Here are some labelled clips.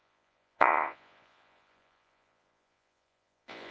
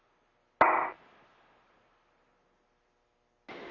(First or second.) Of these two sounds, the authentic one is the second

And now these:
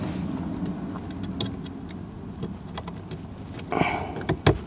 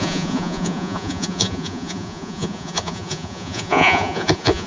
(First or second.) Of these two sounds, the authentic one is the first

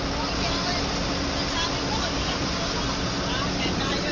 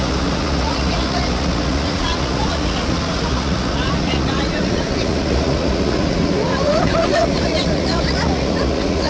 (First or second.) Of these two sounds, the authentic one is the first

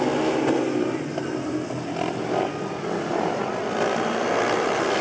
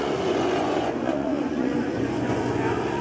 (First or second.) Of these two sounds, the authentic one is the first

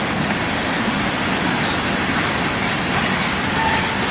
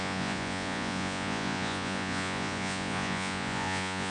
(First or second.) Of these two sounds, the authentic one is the first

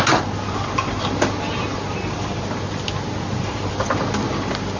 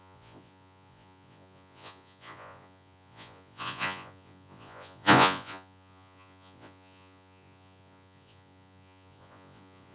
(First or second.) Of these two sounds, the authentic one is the first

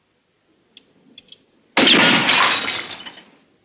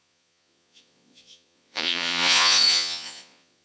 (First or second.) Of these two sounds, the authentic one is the first